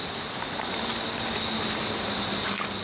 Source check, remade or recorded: recorded